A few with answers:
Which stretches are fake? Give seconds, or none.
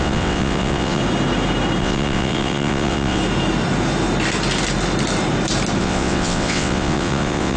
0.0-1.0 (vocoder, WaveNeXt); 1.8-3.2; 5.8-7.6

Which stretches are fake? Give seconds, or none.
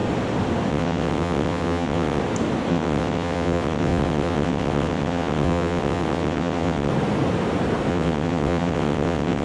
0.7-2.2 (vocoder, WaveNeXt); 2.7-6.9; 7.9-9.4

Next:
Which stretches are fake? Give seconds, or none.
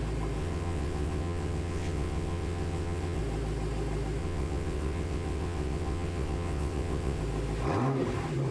0.4-3.2 (vocoder, WaveNeXt); 4.2-7.2